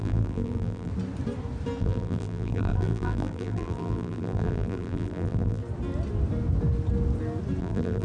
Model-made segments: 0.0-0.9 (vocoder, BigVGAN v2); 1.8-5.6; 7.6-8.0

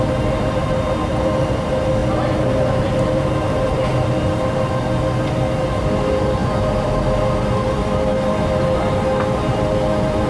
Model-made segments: none

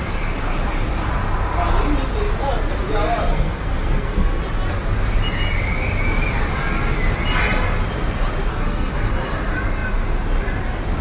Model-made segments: 3.3-4.4 (codec, SNAC); 8.5-9.1

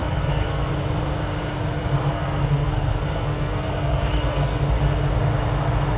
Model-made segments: 0.0-0.7 (codec, SNAC); 2.1-4.8